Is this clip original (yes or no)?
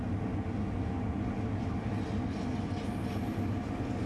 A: yes